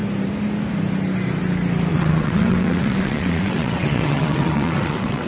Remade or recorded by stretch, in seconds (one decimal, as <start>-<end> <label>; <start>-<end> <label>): 0.0-1.9 recorded; 1.9-5.3 remade